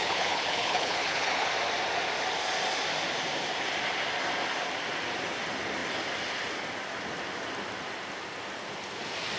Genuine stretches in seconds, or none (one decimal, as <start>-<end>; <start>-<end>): 1.5-9.4

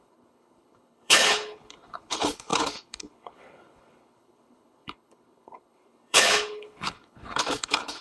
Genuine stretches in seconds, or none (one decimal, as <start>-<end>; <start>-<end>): none

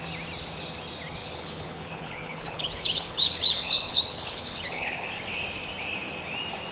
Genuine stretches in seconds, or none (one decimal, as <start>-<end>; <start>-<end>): 0.0-1.2; 5.2-6.7

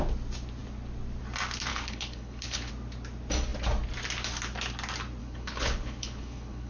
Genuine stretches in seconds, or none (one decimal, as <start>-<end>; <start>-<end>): 0.0-1.7; 2.7-5.2

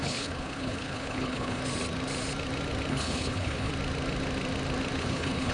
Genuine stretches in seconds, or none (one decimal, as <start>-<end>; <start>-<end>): 1.6-2.9; 3.7-5.0

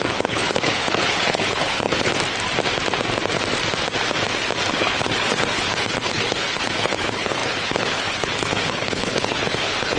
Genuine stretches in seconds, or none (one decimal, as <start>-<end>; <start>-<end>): 2.1-4.7

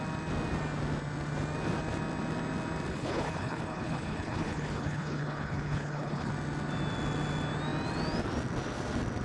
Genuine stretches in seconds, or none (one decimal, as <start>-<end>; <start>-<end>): 0.0-2.9; 6.3-9.2

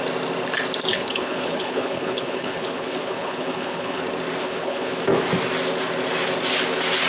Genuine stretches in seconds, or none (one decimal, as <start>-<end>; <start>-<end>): 0.0-0.9; 4.0-4.4; 4.9-7.1